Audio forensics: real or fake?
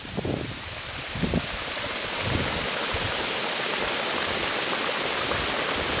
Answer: real